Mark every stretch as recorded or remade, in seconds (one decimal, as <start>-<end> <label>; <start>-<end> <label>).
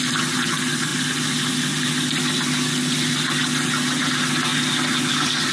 0.0-5.5 recorded